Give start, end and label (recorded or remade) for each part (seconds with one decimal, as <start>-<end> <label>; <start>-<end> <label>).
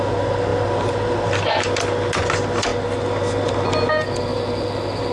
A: 0.0-5.1 recorded